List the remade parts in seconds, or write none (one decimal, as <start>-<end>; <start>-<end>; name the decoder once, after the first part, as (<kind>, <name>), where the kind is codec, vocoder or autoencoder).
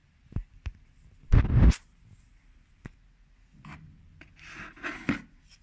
none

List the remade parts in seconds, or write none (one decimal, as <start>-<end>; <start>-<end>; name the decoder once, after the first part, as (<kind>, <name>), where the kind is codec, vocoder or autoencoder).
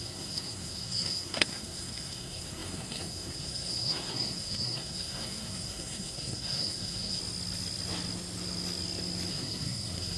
0.0-7.2 (codec, SNAC); 9.3-10.2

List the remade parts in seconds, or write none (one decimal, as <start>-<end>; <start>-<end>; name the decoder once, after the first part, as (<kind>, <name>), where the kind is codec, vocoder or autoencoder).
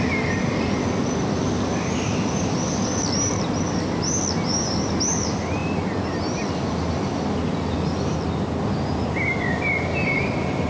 none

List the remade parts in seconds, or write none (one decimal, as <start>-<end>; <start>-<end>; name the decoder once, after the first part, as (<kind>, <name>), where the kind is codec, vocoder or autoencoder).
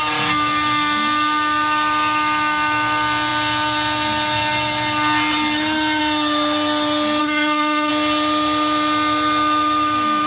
7.2-7.9 (codec, SNAC)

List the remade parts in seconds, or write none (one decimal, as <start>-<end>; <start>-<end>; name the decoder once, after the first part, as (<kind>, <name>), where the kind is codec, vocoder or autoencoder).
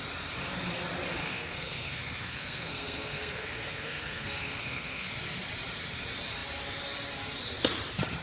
1.2-5.1 (codec, SNAC)